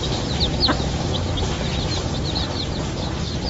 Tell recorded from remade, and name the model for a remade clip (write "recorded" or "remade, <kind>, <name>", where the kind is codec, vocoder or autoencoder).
recorded